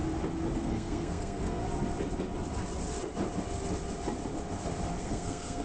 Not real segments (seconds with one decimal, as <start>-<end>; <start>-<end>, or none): 0.6-1.6; 5.0-5.6